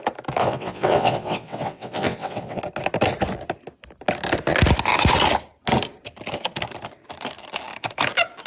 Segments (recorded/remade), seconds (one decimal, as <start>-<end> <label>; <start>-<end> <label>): 0.0-0.4 recorded; 0.4-2.6 remade; 2.6-8.5 recorded